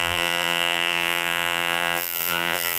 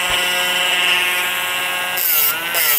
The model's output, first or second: first